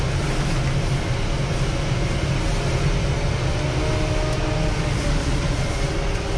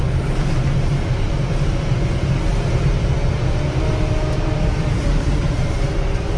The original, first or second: first